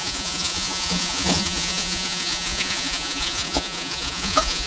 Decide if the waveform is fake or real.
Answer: fake